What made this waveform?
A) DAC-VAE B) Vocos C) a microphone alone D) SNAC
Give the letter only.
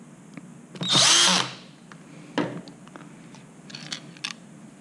C